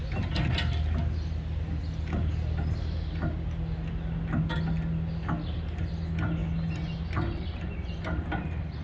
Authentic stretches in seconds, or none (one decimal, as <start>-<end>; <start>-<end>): 0.0-8.8